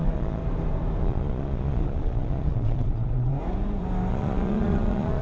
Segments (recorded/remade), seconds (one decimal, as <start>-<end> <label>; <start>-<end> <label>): 0.0-0.4 remade; 0.4-1.0 recorded; 1.0-3.3 remade; 3.3-4.1 recorded; 4.1-5.2 remade